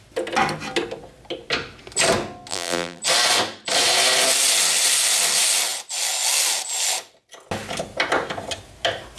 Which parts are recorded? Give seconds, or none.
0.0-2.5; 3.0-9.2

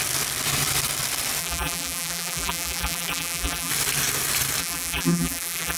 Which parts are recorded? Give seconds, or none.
0.0-1.4; 3.7-4.6

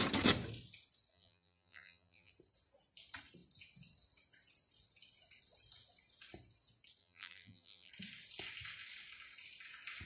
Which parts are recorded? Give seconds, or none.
0.0-1.1; 2.3-7.0; 7.9-10.1

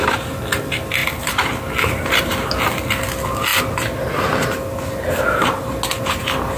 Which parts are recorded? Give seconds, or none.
0.0-6.6

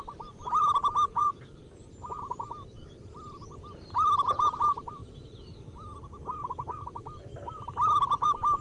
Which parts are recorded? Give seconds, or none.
5.0-6.8

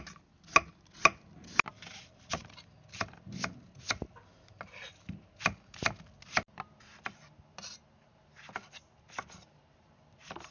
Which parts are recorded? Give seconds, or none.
0.0-10.5

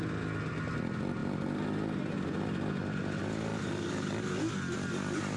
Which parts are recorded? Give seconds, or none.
0.0-5.4

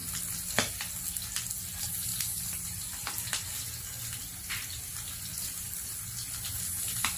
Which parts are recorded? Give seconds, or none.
0.7-2.1; 3.6-4.3; 5.7-7.2